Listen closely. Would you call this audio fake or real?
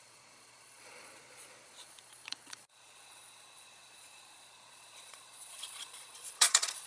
fake